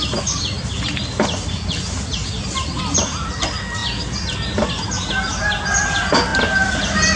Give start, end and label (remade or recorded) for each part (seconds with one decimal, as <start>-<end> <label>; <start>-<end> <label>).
0.0-7.2 recorded